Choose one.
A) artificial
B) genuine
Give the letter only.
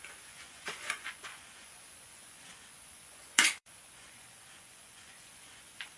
A